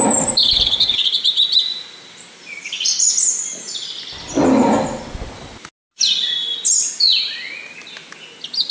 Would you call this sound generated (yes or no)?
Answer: no